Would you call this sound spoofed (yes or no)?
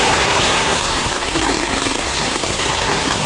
yes